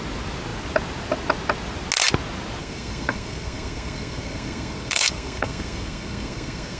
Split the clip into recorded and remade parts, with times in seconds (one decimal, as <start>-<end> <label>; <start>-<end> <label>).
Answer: 0.0-2.6 recorded; 2.6-6.8 remade